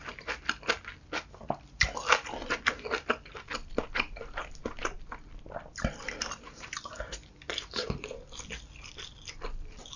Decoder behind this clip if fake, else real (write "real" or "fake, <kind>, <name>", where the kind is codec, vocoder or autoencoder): real